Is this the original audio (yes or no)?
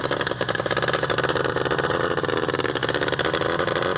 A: yes